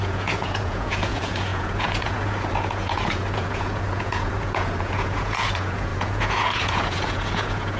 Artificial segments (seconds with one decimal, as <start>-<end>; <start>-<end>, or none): 0.0-7.8